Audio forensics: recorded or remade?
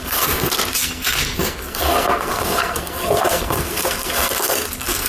remade